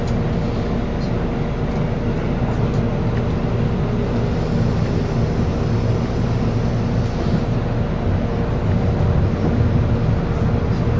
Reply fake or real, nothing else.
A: real